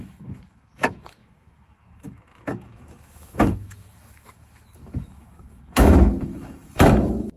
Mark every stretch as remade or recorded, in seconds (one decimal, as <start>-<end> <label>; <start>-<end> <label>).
0.0-7.4 remade

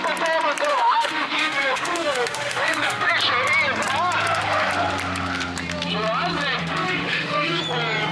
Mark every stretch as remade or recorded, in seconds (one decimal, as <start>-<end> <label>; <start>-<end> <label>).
0.0-0.7 recorded; 0.7-3.1 remade; 3.1-6.6 recorded; 6.6-7.6 remade; 7.6-8.1 recorded

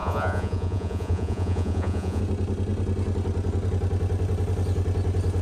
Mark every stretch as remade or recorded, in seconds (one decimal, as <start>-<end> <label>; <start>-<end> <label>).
0.0-2.2 remade; 2.2-5.4 recorded